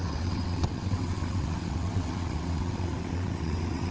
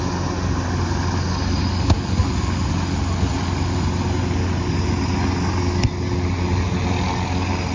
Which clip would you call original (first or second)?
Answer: second